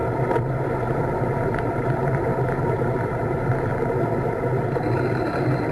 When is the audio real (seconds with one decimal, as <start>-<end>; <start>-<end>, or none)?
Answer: 0.0-1.1; 2.3-3.0; 3.7-4.7